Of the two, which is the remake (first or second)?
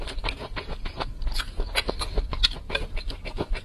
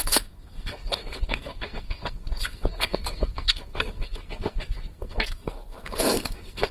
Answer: second